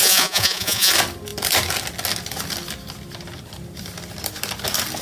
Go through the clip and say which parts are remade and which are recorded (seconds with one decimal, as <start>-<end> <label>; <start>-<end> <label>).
0.0-0.9 remade; 0.9-5.0 recorded